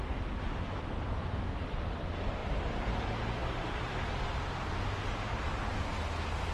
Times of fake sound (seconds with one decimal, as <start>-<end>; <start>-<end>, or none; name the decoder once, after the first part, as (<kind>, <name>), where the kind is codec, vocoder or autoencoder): none